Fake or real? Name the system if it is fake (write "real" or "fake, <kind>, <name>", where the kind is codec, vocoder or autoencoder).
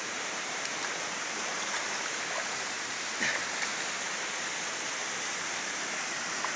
fake, vocoder, BigVGAN v2